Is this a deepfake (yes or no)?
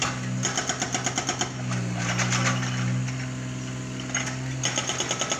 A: no